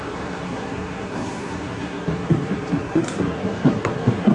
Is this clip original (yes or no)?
no